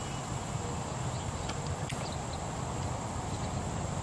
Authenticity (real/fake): fake